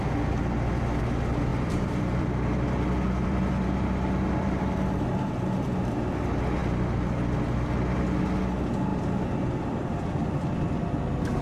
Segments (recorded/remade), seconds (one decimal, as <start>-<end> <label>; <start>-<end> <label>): 0.0-1.5 recorded; 1.5-5.9 remade; 5.9-8.9 recorded; 8.9-10.5 remade; 10.5-11.4 recorded